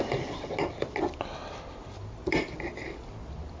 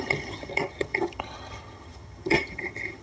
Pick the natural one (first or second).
first